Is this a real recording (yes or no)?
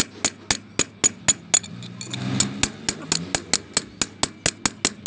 yes